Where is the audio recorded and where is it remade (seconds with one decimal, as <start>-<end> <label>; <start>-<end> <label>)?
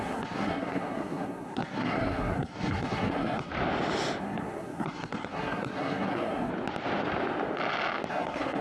0.0-3.5 remade; 3.5-4.2 recorded; 4.2-6.5 remade; 6.5-8.1 recorded; 8.1-8.6 remade